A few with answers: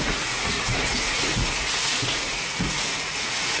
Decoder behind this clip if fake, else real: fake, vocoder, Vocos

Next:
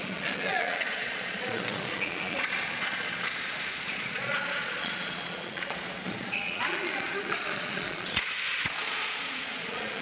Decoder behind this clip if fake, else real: fake, vocoder, Vocos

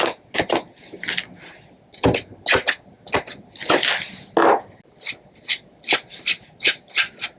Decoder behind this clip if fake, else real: real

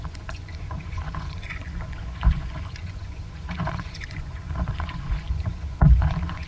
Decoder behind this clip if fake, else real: fake, vocoder, Vocos